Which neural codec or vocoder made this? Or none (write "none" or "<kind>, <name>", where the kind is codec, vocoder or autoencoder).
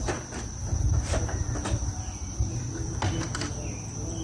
none